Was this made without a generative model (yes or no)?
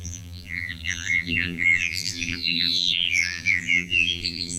no